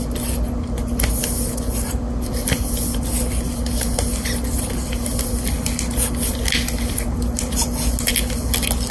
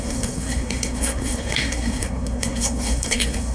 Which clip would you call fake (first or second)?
second